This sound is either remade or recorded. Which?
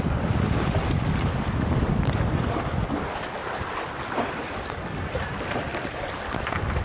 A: remade